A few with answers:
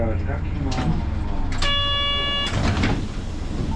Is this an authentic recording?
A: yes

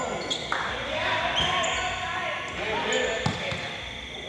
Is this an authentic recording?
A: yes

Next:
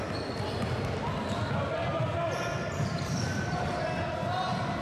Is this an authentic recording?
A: yes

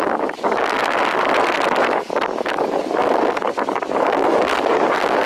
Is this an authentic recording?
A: no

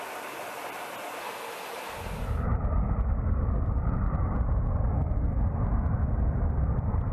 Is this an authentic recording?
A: no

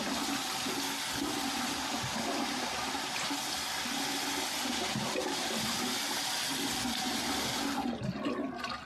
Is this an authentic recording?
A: yes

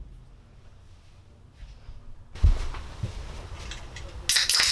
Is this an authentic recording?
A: yes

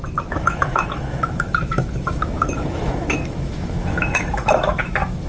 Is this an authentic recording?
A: no